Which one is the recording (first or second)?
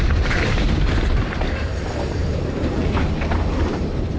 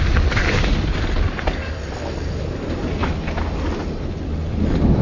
second